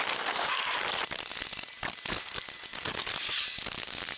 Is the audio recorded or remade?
recorded